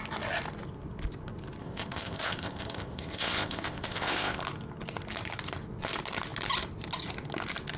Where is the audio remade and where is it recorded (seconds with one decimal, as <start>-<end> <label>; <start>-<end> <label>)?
0.0-1.6 recorded; 1.6-4.4 remade; 4.4-7.8 recorded